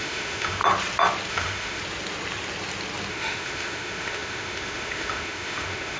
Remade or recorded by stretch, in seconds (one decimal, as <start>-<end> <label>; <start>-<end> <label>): 0.0-0.6 remade; 0.6-1.3 recorded; 1.3-1.8 remade; 1.8-3.1 recorded; 3.1-6.0 remade